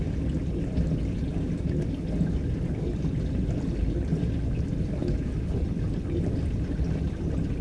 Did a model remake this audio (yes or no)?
no